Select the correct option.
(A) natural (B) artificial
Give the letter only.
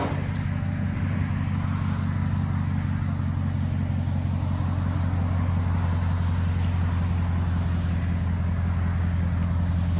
A